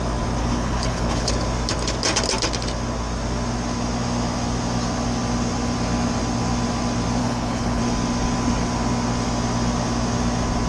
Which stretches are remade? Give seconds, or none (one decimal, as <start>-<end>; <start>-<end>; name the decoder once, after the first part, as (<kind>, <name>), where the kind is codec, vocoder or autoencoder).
0.4-1.3 (codec, HILCodec); 7.2-7.8